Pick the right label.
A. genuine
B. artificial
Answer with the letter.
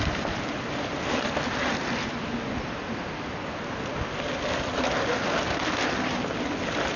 A